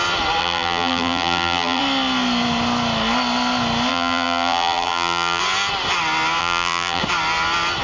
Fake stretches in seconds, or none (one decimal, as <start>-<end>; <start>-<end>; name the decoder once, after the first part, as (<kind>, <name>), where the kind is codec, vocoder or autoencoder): 0.4-1.8 (vocoder, BigVGAN v2); 3.9-5.4; 6.4-7.0